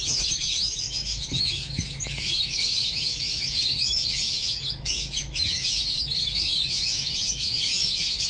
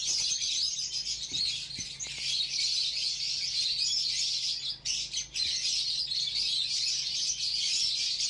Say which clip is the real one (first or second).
second